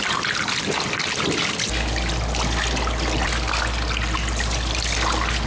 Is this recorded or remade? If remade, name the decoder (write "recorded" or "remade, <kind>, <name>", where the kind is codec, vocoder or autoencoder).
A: recorded